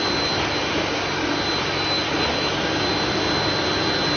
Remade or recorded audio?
recorded